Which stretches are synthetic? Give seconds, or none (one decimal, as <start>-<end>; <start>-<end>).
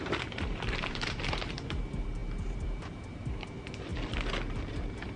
0.0-3.9; 4.7-5.2